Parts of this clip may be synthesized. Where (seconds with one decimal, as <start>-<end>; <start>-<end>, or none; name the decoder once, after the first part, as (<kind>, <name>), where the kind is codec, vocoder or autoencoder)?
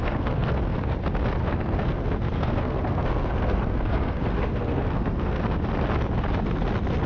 0.0-0.8 (codec, SNAC); 1.4-5.4